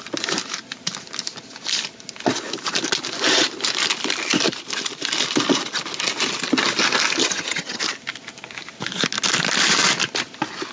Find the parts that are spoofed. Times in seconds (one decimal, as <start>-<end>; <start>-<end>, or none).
7.2-7.8